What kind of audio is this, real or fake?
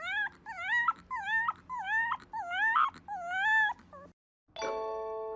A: real